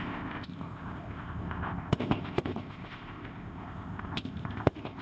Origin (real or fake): fake